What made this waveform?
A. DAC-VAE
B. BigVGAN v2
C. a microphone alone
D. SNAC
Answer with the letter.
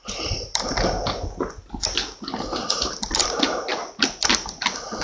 C